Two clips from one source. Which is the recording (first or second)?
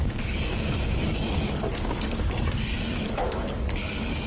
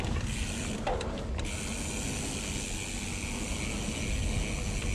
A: second